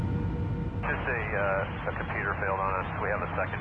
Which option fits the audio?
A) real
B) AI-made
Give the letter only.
A